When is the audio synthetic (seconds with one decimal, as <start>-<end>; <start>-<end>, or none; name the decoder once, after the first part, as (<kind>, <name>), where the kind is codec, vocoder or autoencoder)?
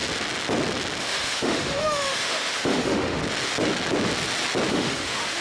1.0-3.2 (autoencoder, DAC-VAE); 4.7-5.4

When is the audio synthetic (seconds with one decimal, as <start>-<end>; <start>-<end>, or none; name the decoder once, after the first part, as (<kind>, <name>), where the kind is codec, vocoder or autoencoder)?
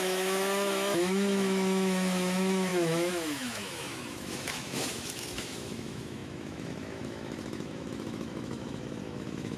0.0-9.6 (autoencoder, DAC-VAE)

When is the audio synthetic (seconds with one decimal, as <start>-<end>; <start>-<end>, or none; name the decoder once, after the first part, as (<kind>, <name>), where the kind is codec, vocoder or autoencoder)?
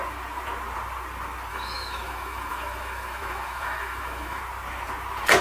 1.5-4.4 (autoencoder, DAC-VAE)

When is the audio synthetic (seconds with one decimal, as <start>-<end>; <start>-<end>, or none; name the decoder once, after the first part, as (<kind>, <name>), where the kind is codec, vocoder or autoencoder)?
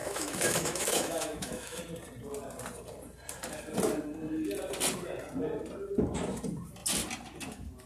0.0-1.8 (autoencoder, DAC-VAE)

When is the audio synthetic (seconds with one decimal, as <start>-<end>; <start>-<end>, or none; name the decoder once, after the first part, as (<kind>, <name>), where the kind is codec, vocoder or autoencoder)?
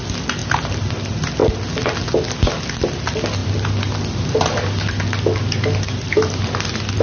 none